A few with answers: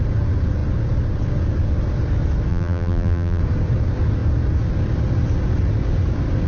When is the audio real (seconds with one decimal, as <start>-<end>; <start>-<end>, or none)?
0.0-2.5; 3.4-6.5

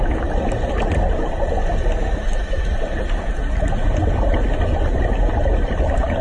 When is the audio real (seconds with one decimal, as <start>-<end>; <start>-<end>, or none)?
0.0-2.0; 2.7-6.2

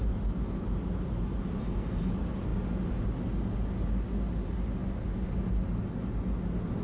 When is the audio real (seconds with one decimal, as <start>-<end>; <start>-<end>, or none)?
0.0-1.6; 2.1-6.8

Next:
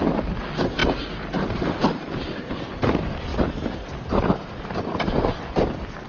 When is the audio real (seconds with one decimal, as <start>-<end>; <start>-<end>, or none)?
0.0-6.1